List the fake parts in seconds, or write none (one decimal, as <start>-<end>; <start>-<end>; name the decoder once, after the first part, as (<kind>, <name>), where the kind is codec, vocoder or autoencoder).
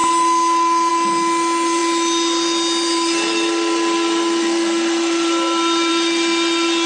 none